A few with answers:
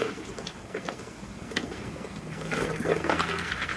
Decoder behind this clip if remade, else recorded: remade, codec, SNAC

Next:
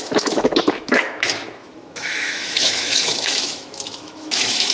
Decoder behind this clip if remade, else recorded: remade, autoencoder, DAC-VAE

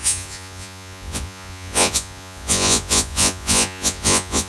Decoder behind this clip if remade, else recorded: remade, vocoder, Vocos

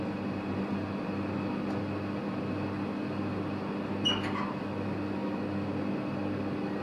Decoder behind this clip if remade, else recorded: recorded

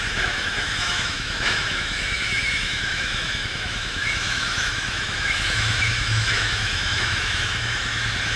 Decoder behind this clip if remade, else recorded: remade, autoencoder, DAC-VAE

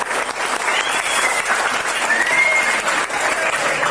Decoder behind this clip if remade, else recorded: recorded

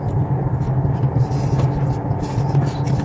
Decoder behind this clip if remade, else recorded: recorded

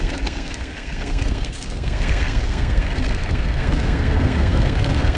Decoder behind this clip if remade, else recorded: remade, codec, SNAC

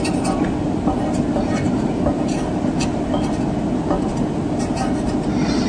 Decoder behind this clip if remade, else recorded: recorded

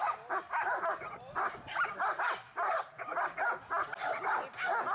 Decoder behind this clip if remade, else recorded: recorded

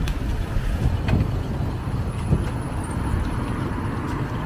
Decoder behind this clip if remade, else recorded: recorded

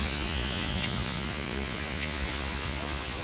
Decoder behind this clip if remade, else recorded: remade, vocoder, Vocos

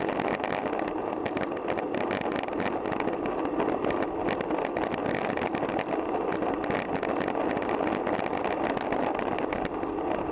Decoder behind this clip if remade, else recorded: recorded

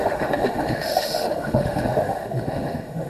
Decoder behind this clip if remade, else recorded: remade, autoencoder, DAC-VAE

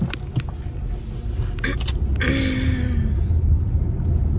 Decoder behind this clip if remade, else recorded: recorded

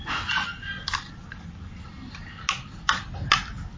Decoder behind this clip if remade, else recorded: recorded